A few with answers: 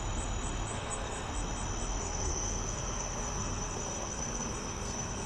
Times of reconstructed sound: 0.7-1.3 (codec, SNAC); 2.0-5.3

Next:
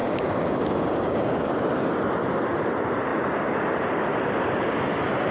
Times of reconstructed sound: 0.0-1.5 (codec, DAC)

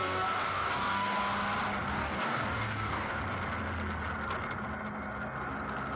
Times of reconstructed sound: 0.0-1.2 (codec, DAC); 1.9-3.2